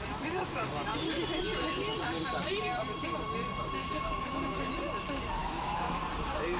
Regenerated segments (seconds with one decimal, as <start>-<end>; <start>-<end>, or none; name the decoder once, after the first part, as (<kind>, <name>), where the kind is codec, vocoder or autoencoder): 3.8-4.7 (autoencoder, DAC-VAE); 5.4-6.0